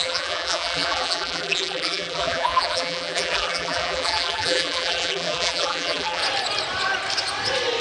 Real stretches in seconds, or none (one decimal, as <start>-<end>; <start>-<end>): 6.2-7.8

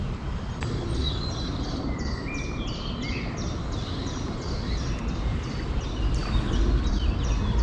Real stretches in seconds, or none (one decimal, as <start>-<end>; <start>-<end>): 0.0-7.6

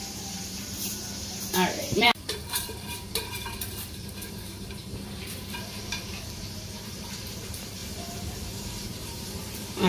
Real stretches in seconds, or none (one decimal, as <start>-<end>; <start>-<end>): none

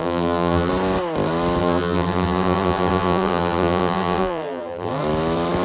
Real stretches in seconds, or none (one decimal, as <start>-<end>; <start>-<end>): 0.7-1.6; 5.0-5.6

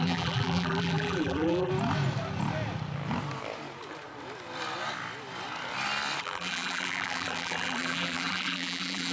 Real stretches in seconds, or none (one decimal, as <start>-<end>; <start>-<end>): 1.7-6.2

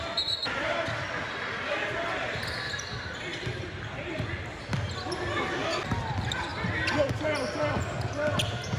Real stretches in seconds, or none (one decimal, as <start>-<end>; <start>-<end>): 0.0-3.3; 4.7-8.8

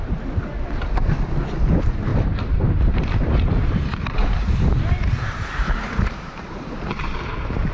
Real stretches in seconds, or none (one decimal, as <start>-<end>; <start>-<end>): 0.0-2.1; 6.7-7.7